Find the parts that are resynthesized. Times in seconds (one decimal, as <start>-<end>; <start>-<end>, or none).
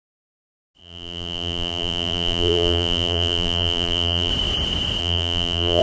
0.8-4.3; 5.0-5.8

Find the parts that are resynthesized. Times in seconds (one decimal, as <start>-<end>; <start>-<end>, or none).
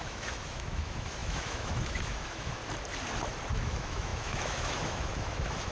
0.0-2.6; 3.5-5.7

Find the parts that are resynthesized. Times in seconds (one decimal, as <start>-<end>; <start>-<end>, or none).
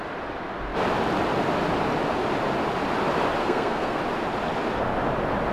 3.4-4.0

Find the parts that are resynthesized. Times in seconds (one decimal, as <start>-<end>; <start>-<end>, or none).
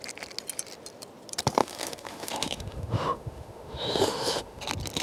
1.6-4.6